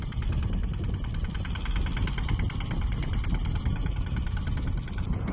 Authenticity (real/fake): real